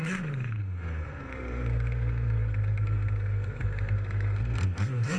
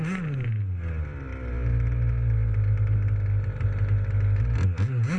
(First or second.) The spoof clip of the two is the first